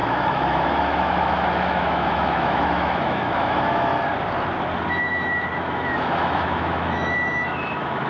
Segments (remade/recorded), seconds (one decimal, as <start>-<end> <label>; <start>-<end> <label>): 0.0-3.9 remade; 3.9-4.9 recorded; 4.9-8.1 remade